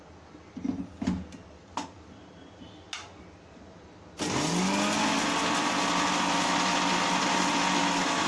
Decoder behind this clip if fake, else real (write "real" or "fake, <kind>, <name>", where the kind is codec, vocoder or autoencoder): real